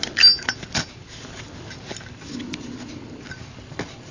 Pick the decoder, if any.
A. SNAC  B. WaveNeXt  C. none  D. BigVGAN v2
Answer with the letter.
C